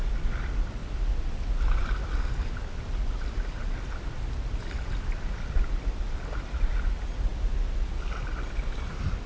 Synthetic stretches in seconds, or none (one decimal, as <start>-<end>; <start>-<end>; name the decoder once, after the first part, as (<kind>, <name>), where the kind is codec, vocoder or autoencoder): none